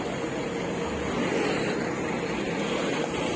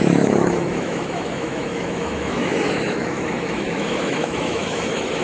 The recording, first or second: first